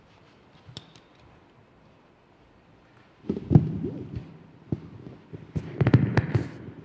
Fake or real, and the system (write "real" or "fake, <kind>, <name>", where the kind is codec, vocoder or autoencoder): real